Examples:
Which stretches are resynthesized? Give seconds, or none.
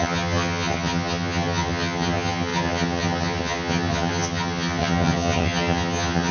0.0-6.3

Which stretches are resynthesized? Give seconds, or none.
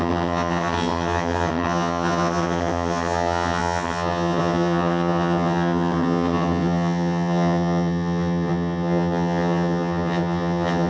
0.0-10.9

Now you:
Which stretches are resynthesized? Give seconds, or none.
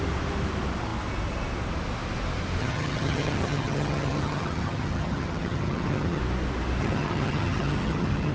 2.6-6.2; 6.8-8.3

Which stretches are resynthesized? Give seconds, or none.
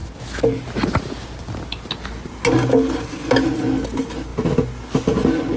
none